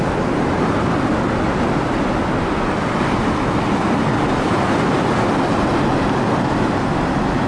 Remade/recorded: recorded